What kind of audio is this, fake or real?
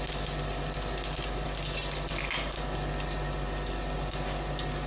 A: real